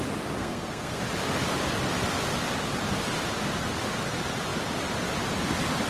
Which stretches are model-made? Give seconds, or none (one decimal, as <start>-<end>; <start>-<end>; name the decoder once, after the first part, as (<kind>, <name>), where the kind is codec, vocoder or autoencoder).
0.4-1.0 (codec, SNAC)